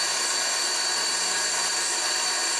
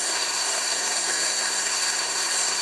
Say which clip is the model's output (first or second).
second